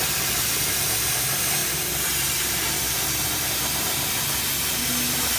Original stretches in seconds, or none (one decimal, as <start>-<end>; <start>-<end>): 0.0-5.4